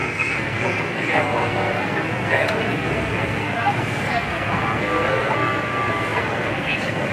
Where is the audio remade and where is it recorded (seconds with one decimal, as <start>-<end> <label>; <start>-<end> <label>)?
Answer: 0.0-7.1 remade

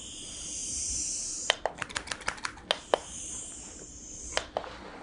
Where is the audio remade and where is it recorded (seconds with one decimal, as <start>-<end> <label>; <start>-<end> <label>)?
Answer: 0.0-0.6 recorded; 0.6-2.1 remade; 2.1-3.0 recorded; 3.0-4.1 remade; 4.1-5.0 recorded

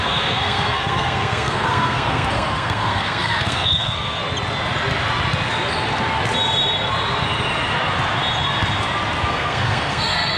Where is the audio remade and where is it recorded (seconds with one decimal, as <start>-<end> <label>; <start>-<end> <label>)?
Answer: 0.0-4.2 remade; 4.2-9.3 recorded; 9.3-10.4 remade

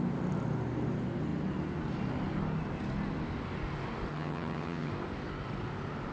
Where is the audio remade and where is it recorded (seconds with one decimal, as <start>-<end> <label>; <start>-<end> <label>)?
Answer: 0.0-4.1 recorded; 4.1-4.9 remade; 4.9-6.1 recorded

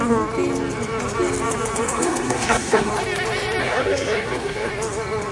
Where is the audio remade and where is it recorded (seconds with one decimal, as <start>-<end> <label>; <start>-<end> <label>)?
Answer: 0.0-1.8 recorded; 1.8-2.9 remade; 2.9-3.6 recorded; 3.6-4.7 remade; 4.7-5.3 recorded